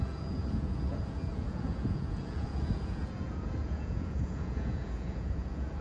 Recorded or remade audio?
remade